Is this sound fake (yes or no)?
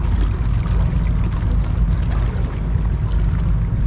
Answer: no